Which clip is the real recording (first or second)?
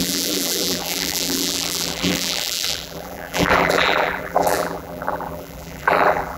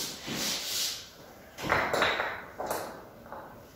second